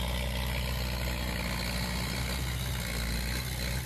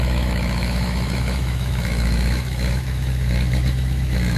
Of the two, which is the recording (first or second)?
first